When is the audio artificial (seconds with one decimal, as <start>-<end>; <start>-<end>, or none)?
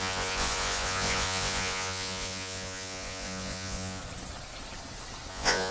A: 0.0-4.0; 5.3-5.7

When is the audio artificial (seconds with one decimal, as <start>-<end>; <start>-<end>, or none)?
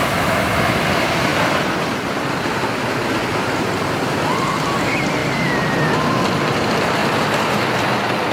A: none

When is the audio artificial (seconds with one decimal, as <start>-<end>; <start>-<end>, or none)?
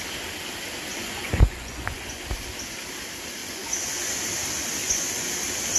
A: 0.9-2.2; 3.4-4.1; 4.8-5.3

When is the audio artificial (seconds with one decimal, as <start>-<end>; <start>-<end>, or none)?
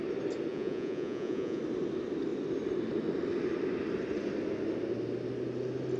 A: 0.5-1.6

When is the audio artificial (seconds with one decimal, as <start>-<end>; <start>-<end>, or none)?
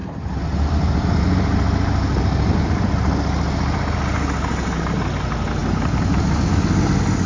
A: none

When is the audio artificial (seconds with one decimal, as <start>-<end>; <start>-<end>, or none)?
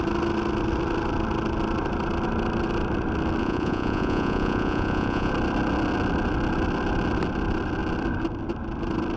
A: 3.4-5.3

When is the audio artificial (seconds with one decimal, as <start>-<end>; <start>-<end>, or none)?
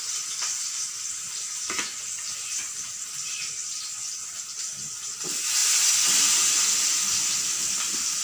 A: none